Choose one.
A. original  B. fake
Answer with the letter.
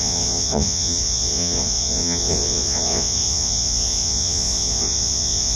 B